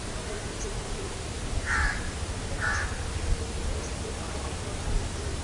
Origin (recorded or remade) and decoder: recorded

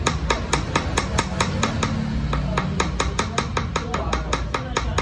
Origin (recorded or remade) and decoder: recorded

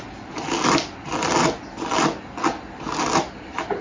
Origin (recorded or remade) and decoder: recorded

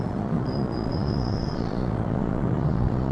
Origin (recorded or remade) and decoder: remade, vocoder, Vocos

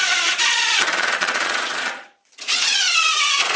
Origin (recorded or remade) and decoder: remade, vocoder, Vocos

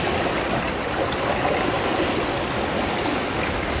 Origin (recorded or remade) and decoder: recorded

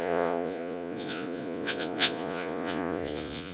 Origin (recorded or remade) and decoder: remade, vocoder, Vocos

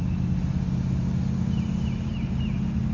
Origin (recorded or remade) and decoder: recorded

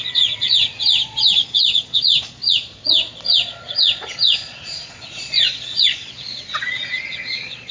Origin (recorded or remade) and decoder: remade, vocoder, Vocos